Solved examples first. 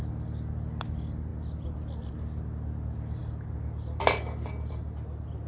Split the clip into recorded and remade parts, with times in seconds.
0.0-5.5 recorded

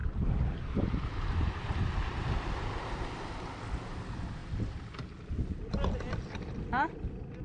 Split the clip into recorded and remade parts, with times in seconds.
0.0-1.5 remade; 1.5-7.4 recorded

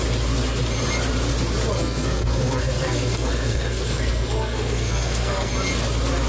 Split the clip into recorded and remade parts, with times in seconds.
0.0-1.7 recorded; 1.7-5.5 remade; 5.5-6.3 recorded

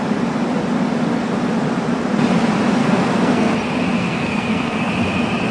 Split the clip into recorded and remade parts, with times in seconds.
0.0-2.8 recorded; 2.8-3.5 remade; 3.5-4.0 recorded; 4.0-4.9 remade; 4.9-5.5 recorded

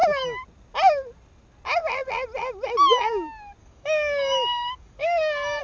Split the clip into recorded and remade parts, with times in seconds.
0.0-3.6 recorded; 3.6-5.6 remade

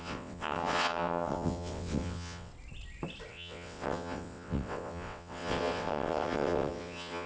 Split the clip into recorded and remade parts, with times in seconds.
0.0-2.5 remade; 2.5-3.3 recorded; 3.3-7.3 remade

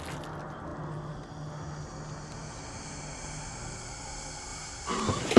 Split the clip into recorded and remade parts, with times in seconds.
0.0-5.4 recorded

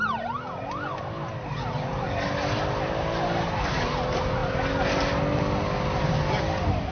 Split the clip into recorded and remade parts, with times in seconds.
0.0-6.9 recorded